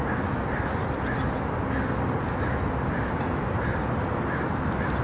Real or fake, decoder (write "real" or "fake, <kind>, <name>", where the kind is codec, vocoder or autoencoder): real